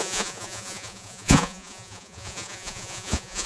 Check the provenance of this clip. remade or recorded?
remade